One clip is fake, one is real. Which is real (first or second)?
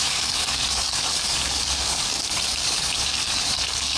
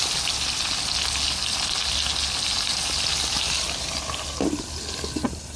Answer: second